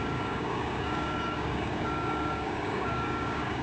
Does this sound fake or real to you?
fake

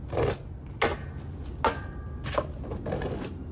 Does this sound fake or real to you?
real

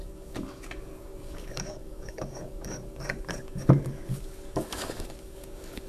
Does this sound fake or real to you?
fake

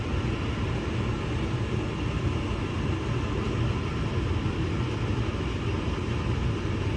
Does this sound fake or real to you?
real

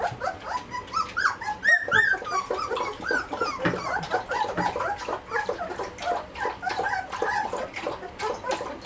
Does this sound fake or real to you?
real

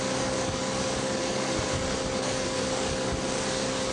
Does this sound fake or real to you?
fake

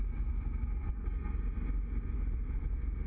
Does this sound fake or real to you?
real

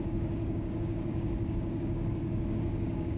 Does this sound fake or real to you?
fake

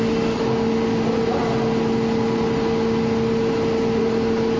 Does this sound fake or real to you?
real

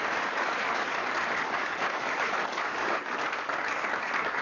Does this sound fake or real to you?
fake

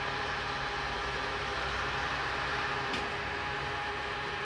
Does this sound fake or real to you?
real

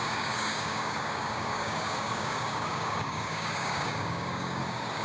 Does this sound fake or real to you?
fake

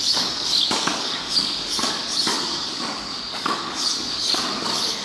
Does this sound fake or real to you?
fake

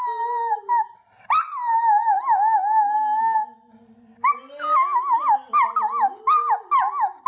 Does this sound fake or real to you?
real